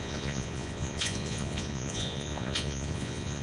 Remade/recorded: remade